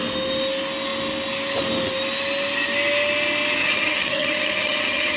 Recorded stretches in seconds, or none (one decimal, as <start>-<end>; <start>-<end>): 0.0-3.6